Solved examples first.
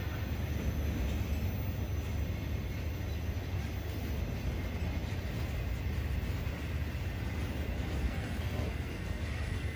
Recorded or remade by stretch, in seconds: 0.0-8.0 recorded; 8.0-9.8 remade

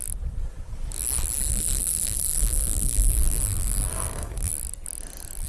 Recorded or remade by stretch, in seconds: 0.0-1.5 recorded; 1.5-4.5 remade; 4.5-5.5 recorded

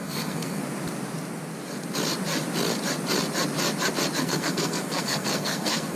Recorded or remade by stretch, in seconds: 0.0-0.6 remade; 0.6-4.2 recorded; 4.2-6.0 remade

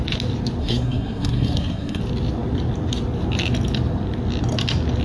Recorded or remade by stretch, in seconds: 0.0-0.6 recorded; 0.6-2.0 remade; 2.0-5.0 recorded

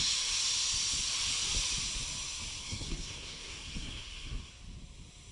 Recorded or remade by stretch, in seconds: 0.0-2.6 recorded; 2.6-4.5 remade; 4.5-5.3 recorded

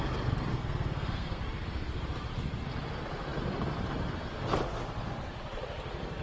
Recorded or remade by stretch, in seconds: 0.0-0.5 recorded; 0.5-1.4 remade; 1.4-6.2 recorded

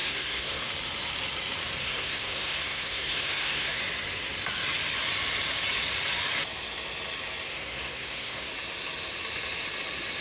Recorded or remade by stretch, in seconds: 0.0-0.7 remade; 0.7-1.8 recorded; 1.8-3.8 remade; 3.8-7.5 recorded; 7.5-8.5 remade; 8.5-10.2 recorded

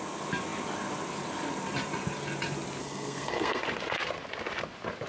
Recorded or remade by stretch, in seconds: 0.0-2.8 recorded; 2.8-3.6 remade; 3.6-5.1 recorded